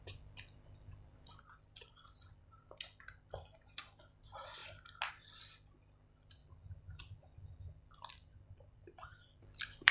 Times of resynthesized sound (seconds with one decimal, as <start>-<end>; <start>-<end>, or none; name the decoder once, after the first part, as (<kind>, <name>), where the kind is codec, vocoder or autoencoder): 0.0-2.6 (vocoder, BigVGAN v2); 4.0-4.6; 5.1-6.4; 8.1-9.9